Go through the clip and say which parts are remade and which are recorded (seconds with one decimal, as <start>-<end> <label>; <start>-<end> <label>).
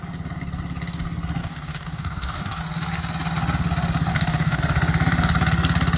0.0-1.4 recorded; 1.4-2.6 remade; 2.6-4.1 recorded; 4.1-4.6 remade; 4.6-6.0 recorded